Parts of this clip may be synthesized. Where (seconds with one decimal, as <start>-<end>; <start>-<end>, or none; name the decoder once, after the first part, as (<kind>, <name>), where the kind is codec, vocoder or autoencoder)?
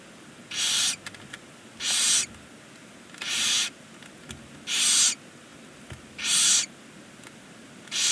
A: none